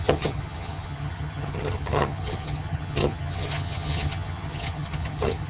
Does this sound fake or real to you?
fake